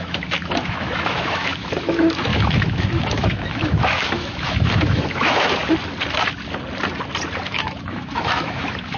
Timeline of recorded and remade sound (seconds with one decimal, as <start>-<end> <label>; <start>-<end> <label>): 0.0-5.6 remade; 5.6-7.5 recorded; 7.5-9.0 remade